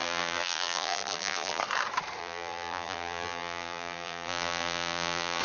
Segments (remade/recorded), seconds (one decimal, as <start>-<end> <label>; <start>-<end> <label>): 0.0-1.6 remade; 1.6-2.2 recorded; 2.2-5.4 remade